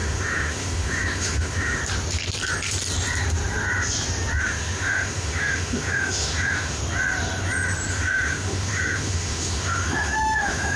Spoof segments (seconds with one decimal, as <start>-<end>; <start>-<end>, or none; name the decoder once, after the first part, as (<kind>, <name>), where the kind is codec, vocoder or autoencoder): 0.0-1.8 (autoencoder, DAC-VAE); 4.4-6.8; 7.9-10.8

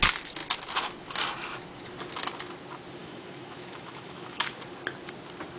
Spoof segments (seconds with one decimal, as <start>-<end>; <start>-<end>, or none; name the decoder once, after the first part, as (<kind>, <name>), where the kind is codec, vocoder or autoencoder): 3.0-4.6 (autoencoder, DAC-VAE)

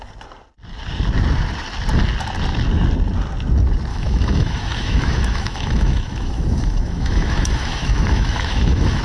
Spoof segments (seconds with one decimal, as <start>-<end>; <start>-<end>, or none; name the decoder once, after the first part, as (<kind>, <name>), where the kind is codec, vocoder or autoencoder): 3.9-9.0 (autoencoder, DAC-VAE)

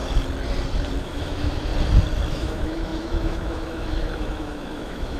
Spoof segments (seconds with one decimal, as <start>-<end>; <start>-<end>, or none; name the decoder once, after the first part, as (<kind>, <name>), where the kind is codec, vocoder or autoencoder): 1.0-1.7 (autoencoder, DAC-VAE); 2.3-5.2